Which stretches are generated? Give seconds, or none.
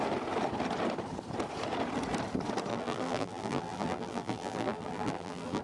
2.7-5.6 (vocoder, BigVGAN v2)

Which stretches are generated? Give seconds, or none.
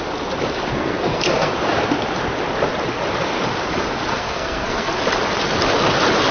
0.7-1.5 (codec, SNAC); 4.1-4.9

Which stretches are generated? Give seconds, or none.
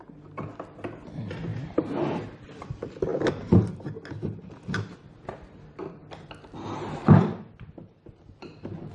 none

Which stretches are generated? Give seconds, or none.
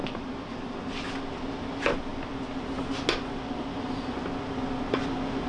none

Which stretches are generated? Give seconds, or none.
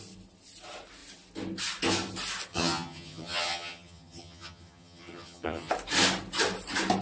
2.5-5.7 (vocoder, HiFi-GAN)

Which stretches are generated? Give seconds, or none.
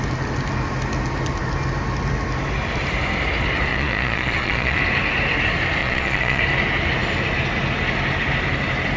3.7-4.8 (vocoder, Vocos); 5.8-6.4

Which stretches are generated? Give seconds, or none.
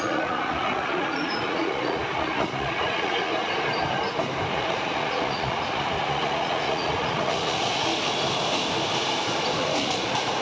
0.0-3.3 (vocoder, Vocos); 4.5-7.9; 9.6-10.4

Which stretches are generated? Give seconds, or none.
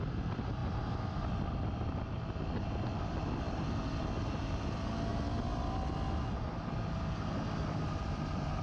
none